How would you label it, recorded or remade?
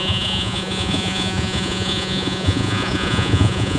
remade